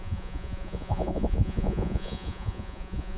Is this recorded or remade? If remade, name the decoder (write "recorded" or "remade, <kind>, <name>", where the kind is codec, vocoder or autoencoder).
remade, vocoder, Vocos